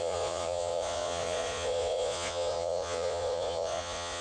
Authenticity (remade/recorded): remade